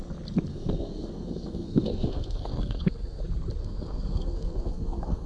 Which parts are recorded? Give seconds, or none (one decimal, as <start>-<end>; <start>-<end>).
0.0-0.5; 3.2-3.6